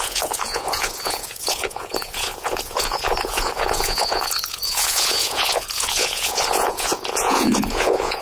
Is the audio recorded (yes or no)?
no